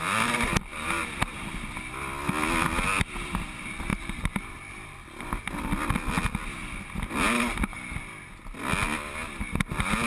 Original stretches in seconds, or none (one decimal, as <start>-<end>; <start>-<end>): 0.0-0.7; 1.5-3.9; 4.5-10.1